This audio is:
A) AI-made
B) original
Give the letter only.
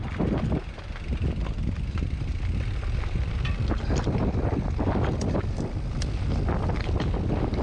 B